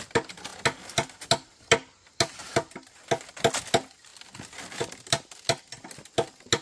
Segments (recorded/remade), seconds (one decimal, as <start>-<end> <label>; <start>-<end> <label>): 0.0-6.6 recorded